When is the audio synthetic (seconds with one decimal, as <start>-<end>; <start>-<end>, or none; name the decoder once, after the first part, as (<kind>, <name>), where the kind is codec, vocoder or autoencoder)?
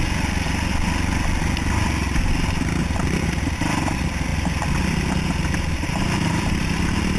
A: none